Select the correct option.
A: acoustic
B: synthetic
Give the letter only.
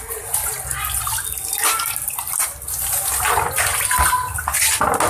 A